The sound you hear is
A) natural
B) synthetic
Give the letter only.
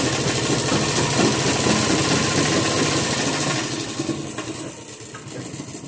A